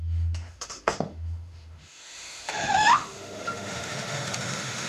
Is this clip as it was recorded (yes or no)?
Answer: no